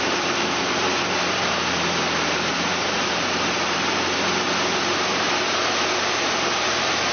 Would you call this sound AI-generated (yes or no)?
yes